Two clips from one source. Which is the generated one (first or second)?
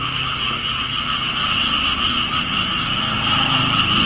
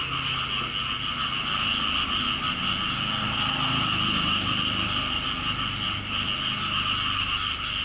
first